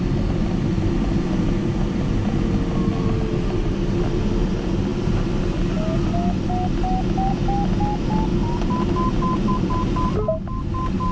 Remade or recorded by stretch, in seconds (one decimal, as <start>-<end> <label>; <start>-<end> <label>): 0.0-11.1 recorded